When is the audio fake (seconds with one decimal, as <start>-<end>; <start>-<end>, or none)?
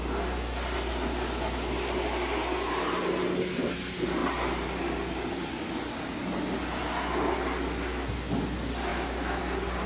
8.9-9.4